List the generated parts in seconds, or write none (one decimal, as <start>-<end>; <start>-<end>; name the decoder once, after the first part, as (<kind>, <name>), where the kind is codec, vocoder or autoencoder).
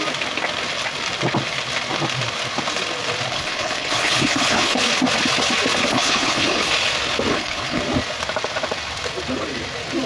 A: 3.3-4.8 (codec, HILCodec); 5.9-6.6; 7.3-7.8